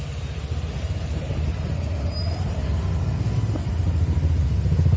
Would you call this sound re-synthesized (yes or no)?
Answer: no